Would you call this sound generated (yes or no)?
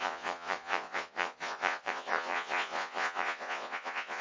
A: yes